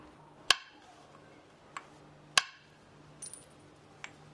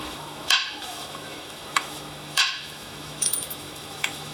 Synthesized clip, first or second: second